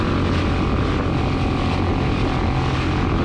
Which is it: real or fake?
real